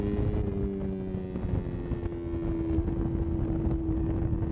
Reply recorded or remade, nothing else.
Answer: recorded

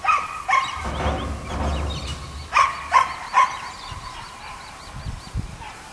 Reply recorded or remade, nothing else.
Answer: recorded